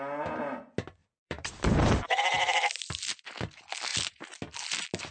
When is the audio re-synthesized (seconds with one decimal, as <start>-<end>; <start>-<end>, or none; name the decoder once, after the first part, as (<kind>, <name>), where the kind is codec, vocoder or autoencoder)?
1.0-2.2 (vocoder, BigVGAN v2); 3.9-4.4